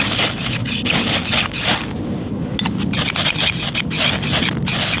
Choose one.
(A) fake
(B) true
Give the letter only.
B